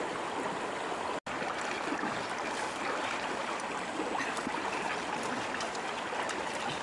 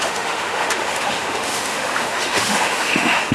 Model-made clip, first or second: second